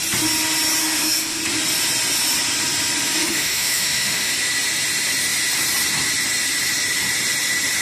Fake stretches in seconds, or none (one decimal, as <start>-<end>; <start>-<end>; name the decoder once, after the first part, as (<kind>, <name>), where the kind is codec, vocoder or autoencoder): 0.8-1.4 (autoencoder, DAC-VAE); 3.2-4.3